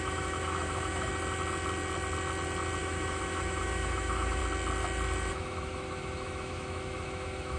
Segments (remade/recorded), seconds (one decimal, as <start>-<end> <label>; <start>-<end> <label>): 0.0-1.1 remade; 1.1-2.8 recorded; 2.8-4.4 remade; 4.4-5.3 recorded; 5.3-7.6 remade